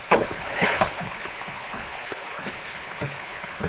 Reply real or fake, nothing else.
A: fake